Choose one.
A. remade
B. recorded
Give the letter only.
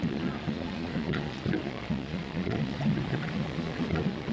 A